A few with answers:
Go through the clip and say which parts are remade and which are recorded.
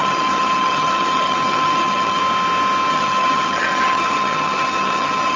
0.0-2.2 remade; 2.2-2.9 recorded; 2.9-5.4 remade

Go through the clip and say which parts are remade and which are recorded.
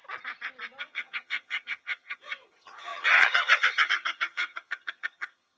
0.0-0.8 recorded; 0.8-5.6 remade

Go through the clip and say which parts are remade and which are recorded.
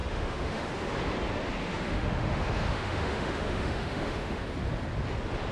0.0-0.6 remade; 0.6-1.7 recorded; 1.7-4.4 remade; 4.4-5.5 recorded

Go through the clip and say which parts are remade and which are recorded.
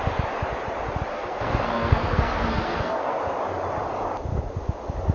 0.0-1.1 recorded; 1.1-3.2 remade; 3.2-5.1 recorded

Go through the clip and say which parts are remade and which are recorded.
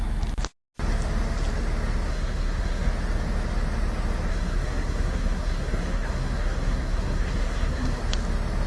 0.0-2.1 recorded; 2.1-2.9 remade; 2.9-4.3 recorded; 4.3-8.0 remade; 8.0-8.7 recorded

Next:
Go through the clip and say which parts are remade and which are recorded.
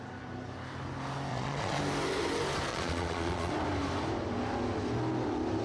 0.0-1.3 recorded; 1.3-1.8 remade; 1.8-2.7 recorded; 2.7-3.5 remade; 3.5-5.6 recorded